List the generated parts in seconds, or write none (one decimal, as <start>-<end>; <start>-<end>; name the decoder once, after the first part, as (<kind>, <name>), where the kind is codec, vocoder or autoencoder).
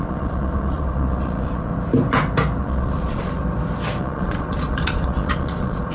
0.0-1.7 (vocoder, Vocos); 2.6-3.4; 4.0-5.9